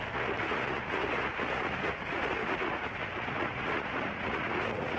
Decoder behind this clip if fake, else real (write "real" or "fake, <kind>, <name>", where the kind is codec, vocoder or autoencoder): fake, vocoder, Vocos